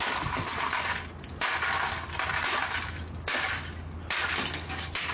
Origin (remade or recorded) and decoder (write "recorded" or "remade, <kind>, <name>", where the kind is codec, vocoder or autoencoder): recorded